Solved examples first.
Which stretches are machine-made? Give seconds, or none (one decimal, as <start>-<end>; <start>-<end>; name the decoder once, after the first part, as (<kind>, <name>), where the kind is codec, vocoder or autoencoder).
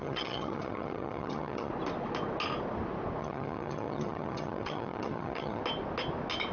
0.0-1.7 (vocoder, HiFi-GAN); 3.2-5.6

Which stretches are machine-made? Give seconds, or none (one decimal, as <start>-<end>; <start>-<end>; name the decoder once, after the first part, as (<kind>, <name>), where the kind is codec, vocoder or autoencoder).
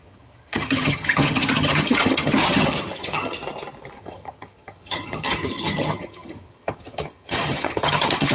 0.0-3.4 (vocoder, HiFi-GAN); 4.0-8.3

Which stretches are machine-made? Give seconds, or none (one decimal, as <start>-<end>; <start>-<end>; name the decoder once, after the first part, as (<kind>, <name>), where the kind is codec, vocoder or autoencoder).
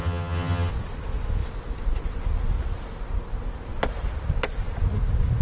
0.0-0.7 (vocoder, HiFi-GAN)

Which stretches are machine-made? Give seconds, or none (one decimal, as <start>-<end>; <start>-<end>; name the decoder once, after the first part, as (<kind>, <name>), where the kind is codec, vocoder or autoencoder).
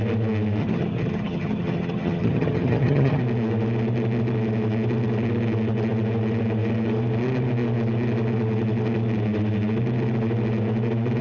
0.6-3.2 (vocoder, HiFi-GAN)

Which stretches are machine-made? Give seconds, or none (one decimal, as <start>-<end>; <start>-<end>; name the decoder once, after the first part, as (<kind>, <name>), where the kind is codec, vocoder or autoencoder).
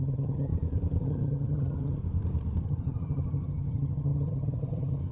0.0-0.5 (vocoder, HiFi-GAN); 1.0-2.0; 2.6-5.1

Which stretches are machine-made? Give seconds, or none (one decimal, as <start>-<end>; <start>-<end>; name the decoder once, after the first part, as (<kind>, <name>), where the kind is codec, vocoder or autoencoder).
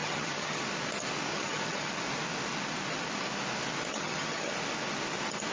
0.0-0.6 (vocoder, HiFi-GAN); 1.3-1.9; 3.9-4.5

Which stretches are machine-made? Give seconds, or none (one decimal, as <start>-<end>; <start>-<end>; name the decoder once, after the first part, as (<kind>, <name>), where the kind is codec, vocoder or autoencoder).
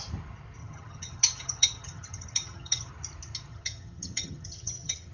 0.6-2.9 (vocoder, HiFi-GAN); 3.5-5.1